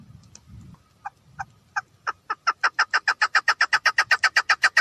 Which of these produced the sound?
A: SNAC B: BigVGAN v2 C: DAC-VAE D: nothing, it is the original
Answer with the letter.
D